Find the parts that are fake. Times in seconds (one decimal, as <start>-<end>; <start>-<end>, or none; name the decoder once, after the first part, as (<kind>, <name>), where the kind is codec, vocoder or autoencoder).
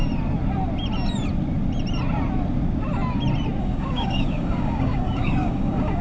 3.6-6.0 (codec, DAC)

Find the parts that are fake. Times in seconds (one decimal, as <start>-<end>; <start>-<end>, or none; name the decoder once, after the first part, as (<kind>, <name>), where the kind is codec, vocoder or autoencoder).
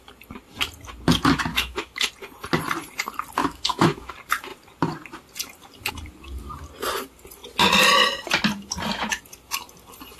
1.5-2.1 (autoencoder, DAC-VAE); 3.4-4.1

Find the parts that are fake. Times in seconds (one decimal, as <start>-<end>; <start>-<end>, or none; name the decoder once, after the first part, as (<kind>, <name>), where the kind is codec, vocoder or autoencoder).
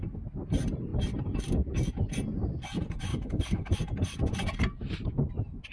3.1-3.7 (codec, HILCodec)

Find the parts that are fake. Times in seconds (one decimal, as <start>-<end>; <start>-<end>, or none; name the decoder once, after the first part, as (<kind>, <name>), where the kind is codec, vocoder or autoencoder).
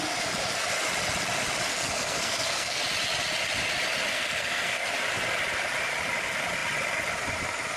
1.7-2.8 (codec, SNAC); 4.1-4.9